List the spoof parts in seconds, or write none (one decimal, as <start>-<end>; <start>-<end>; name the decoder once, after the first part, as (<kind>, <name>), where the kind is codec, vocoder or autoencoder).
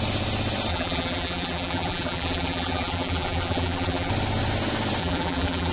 0.7-4.1 (vocoder, BigVGAN v2); 5.0-5.7